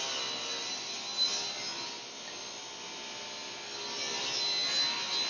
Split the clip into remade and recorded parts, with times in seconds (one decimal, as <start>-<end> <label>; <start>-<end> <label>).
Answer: 0.0-5.3 recorded